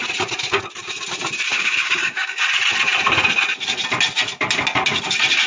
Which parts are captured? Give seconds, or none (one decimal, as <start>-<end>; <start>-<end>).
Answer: 0.0-1.5; 2.4-5.5